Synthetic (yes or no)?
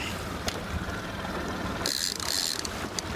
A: no